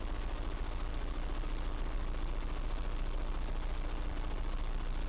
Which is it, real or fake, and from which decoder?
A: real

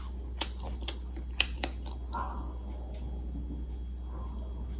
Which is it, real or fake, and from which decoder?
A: real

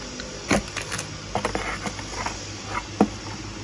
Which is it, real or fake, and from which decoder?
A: real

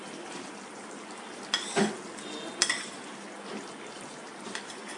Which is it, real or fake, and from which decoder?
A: real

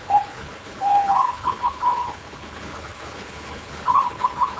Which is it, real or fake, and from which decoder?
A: fake, codec, HILCodec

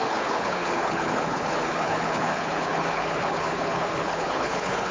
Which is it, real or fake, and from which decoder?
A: fake, codec, HILCodec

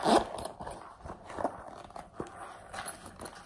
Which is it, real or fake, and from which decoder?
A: real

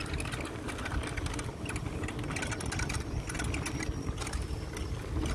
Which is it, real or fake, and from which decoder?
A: real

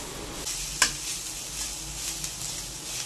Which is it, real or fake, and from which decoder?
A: real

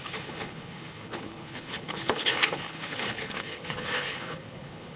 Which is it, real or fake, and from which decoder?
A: fake, codec, HILCodec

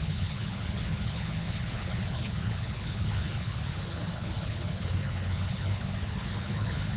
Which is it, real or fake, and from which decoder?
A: fake, codec, HILCodec